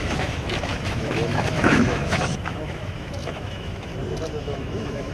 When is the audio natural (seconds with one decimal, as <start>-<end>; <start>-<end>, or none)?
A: 3.9-4.4